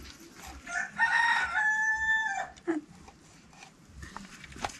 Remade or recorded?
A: remade